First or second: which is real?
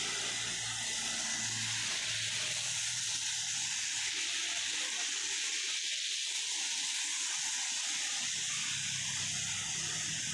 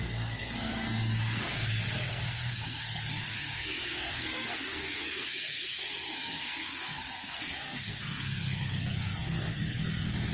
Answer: first